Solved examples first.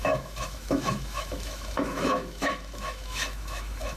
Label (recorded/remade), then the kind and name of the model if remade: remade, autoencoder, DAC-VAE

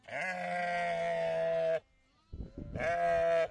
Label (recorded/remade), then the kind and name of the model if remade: recorded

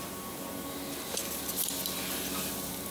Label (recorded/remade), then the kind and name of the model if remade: recorded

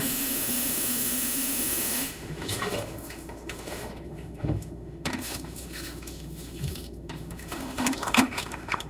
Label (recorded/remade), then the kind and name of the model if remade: remade, autoencoder, DAC-VAE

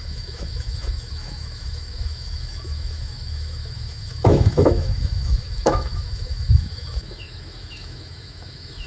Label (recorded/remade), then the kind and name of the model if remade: remade, autoencoder, DAC-VAE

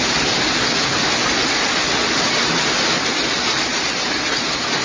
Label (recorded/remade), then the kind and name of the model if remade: recorded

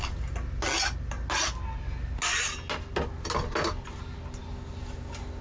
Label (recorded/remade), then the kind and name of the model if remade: recorded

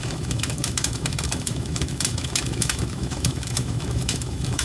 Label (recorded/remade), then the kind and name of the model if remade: remade, autoencoder, DAC-VAE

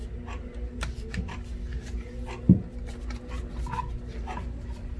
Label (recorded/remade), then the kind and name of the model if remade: recorded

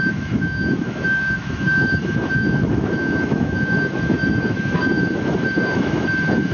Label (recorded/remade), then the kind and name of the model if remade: remade, autoencoder, DAC-VAE